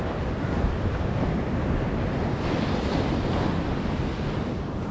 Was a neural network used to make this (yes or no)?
no